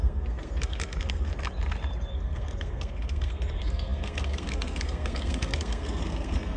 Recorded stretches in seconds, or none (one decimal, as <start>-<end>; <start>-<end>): 1.3-2.1

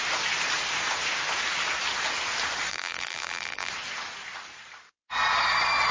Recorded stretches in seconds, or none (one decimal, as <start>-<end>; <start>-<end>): 0.0-2.7; 3.7-5.9

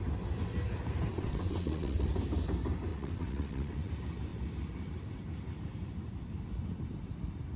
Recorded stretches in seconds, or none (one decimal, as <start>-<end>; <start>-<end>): 0.0-1.1; 2.1-2.9; 3.9-7.6

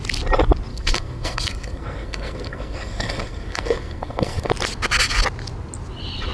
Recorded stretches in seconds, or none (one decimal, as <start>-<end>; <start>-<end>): 0.0-0.7; 4.5-6.3

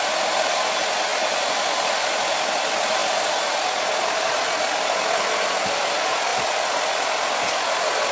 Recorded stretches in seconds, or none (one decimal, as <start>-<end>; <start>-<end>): 0.0-8.1